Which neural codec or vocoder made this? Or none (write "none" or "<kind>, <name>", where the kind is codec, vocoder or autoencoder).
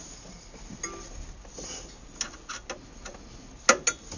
none